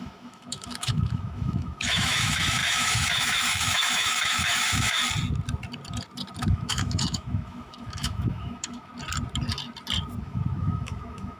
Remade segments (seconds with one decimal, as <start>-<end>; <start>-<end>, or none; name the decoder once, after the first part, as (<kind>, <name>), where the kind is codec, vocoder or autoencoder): 0.0-5.0 (autoencoder, DAC-VAE); 6.4-8.9; 10.2-11.4